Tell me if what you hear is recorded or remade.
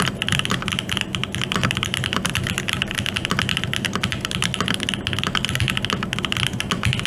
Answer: recorded